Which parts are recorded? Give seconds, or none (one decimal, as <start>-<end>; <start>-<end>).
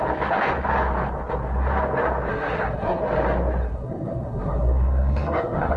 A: 0.0-2.3; 3.0-3.6